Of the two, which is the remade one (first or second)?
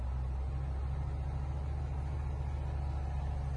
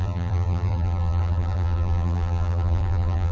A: second